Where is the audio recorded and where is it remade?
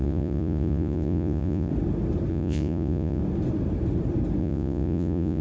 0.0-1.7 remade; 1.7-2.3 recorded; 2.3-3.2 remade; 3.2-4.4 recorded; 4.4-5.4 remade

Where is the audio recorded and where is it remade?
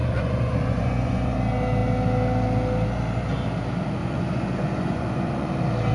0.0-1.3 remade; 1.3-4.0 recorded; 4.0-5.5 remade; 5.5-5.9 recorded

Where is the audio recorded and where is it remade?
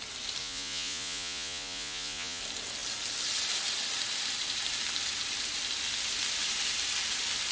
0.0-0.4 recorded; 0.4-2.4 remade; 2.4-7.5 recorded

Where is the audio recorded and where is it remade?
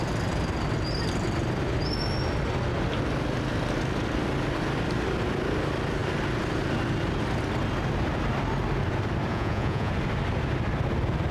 0.0-9.3 recorded; 9.3-9.9 remade; 9.9-11.3 recorded